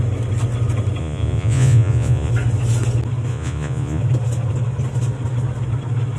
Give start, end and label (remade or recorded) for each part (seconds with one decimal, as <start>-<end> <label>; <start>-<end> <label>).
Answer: 0.0-1.0 recorded; 1.0-2.3 remade; 2.3-3.3 recorded; 3.3-4.0 remade; 4.0-6.2 recorded